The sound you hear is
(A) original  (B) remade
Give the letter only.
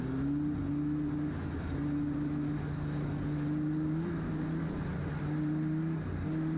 A